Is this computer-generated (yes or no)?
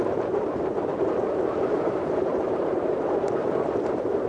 yes